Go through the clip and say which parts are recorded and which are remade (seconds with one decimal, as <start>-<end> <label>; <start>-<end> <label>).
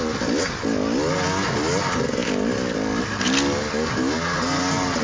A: 0.0-5.0 recorded